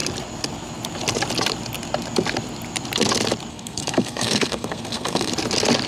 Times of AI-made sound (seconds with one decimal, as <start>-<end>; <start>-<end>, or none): 3.5-5.3